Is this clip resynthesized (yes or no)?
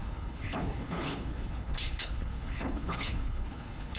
yes